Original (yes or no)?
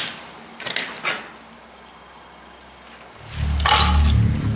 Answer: yes